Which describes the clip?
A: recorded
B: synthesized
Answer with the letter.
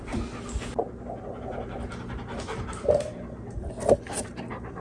A